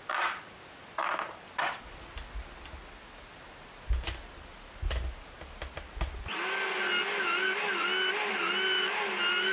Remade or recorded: recorded